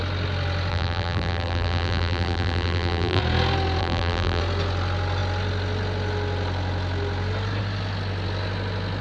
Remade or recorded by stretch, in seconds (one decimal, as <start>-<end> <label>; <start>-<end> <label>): 0.0-0.7 recorded; 0.7-3.2 remade; 3.2-3.8 recorded; 3.8-4.4 remade; 4.4-9.0 recorded